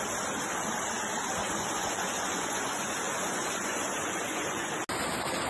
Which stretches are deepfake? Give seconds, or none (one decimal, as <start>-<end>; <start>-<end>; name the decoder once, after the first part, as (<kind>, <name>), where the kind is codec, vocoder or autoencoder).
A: 1.4-4.7 (vocoder, Vocos)